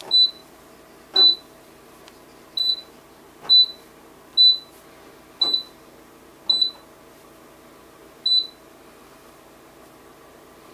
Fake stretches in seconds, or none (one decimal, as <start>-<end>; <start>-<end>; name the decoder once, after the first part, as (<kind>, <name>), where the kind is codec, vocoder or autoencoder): none